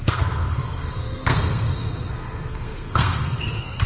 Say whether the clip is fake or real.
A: fake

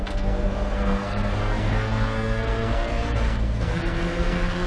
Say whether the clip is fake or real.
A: fake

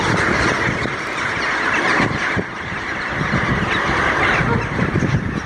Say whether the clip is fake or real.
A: real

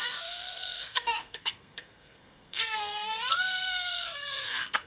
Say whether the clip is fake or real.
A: fake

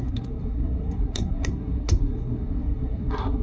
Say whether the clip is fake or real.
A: fake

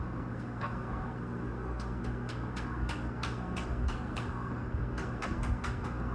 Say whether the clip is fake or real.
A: fake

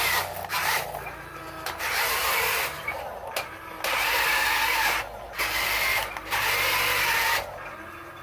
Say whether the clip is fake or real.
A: real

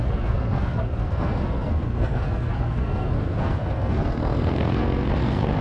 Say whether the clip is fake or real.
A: fake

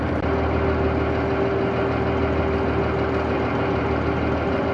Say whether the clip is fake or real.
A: real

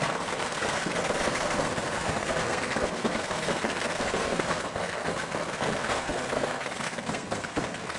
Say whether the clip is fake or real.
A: fake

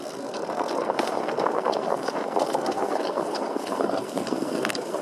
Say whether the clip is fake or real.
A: fake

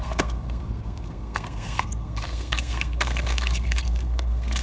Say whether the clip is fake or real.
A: fake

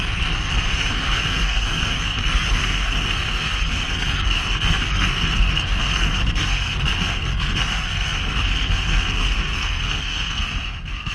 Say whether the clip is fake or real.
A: fake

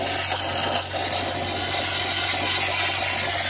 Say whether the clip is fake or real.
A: real